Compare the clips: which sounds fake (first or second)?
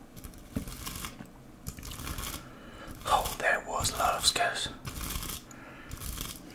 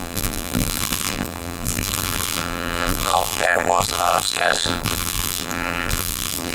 second